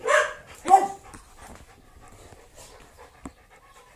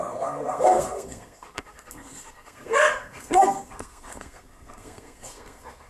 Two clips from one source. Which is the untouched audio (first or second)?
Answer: first